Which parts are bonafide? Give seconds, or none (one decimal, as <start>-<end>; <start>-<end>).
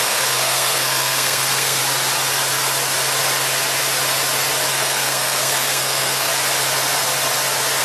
1.8-4.7; 6.3-7.8